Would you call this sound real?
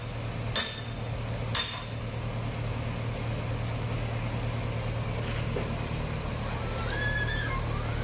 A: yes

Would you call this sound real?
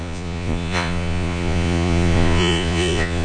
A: no